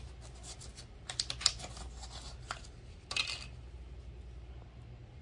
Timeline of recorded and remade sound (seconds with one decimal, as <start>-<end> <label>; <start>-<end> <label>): 0.0-5.2 recorded